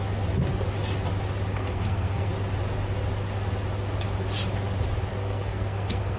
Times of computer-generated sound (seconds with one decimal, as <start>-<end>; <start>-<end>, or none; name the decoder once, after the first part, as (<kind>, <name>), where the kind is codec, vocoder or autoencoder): 1.5-2.3 (codec, SNAC); 5.1-6.2